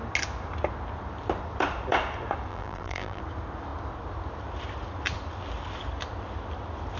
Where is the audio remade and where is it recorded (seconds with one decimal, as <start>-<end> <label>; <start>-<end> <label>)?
0.0-2.5 recorded; 2.5-3.2 remade; 3.2-7.0 recorded

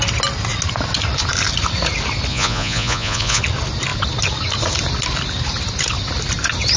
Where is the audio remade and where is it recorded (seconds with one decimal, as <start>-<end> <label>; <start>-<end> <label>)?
0.0-2.3 recorded; 2.3-3.4 remade; 3.4-6.8 recorded

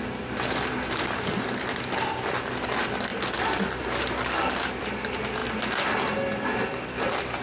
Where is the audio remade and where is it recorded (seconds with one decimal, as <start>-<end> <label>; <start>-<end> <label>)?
0.0-7.4 recorded

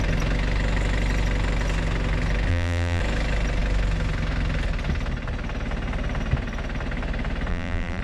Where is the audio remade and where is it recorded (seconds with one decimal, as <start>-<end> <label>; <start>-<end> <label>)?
0.0-2.5 recorded; 2.5-3.0 remade; 3.0-7.5 recorded; 7.5-8.0 remade

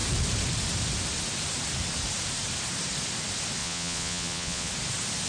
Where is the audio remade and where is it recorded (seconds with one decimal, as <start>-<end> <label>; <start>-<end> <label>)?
0.0-3.6 recorded; 3.6-4.7 remade; 4.7-5.3 recorded